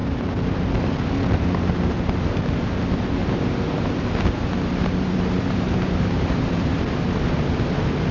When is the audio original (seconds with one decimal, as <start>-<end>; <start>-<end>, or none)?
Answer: 0.0-3.2; 7.4-8.1

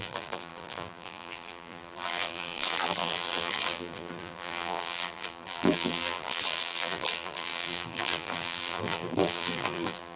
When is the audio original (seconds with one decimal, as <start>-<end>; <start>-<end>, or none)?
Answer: none

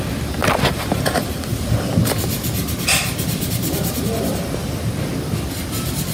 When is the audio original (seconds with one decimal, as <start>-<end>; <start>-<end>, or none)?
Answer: 0.0-0.4; 1.2-6.1

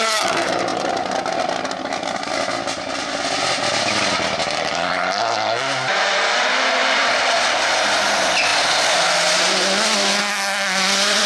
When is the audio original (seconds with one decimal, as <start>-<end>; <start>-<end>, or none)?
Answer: 0.0-6.8; 7.3-11.3

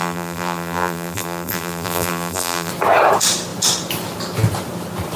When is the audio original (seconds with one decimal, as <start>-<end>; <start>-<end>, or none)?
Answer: 2.7-5.2

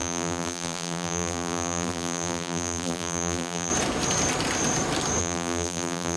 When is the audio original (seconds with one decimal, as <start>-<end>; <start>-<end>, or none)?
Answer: 3.7-5.2

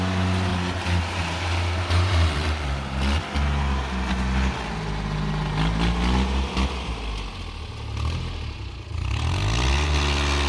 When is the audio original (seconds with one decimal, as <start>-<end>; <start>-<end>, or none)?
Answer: 0.0-0.5; 3.2-10.5

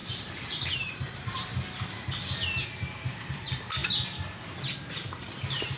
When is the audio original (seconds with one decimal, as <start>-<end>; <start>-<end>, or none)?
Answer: 1.5-3.3; 3.8-5.0